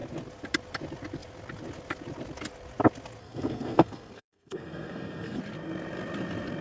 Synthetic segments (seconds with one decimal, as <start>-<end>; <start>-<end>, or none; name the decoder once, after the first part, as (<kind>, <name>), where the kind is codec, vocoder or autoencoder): 3.2-5.4 (codec, SNAC)